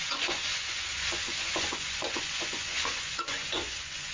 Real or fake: fake